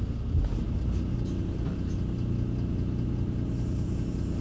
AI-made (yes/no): no